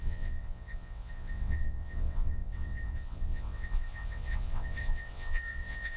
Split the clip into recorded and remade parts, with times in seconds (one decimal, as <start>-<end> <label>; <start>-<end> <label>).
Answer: 0.0-6.0 remade

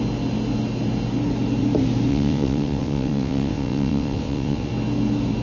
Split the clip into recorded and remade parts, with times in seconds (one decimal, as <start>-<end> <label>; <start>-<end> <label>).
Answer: 0.0-2.1 recorded; 2.1-4.7 remade; 4.7-5.4 recorded

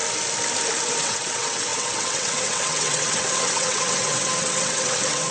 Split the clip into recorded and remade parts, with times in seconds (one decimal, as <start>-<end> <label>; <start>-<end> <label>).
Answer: 0.0-0.8 recorded; 0.8-5.3 remade

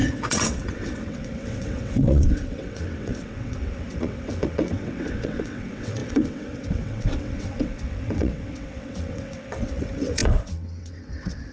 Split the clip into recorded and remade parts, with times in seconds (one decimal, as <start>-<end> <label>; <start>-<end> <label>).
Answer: 0.0-11.5 remade

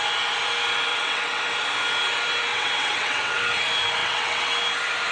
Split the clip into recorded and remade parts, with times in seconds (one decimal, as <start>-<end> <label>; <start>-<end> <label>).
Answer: 0.0-0.9 recorded; 0.9-1.4 remade; 1.4-2.5 recorded; 2.5-3.4 remade; 3.4-4.0 recorded; 4.0-4.5 remade; 4.5-5.1 recorded